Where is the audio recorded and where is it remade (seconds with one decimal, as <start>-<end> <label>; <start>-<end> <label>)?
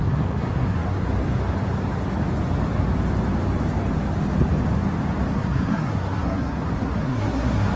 0.0-1.1 remade; 1.1-5.3 recorded; 5.3-7.8 remade